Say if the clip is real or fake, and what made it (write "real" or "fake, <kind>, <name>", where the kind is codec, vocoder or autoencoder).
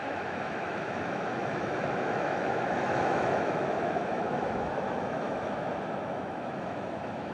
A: fake, autoencoder, DAC-VAE